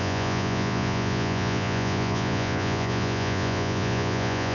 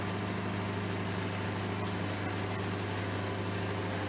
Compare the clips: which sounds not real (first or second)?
first